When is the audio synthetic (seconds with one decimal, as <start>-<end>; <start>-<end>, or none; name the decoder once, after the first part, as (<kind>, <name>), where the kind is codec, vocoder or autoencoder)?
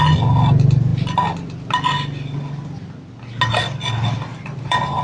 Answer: 4.3-5.0 (vocoder, BigVGAN v2)